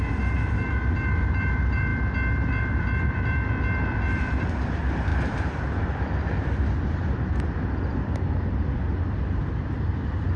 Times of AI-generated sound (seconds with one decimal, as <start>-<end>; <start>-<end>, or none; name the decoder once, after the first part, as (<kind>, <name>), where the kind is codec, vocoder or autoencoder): 0.0-1.9 (vocoder, BigVGAN v2); 2.6-10.4